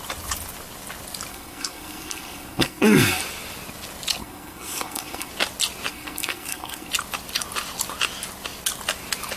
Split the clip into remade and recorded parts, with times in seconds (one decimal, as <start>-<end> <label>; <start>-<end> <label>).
0.0-1.3 recorded; 1.3-3.2 remade; 3.2-4.2 recorded; 4.2-5.3 remade; 5.3-5.9 recorded; 5.9-6.9 remade; 6.9-9.4 recorded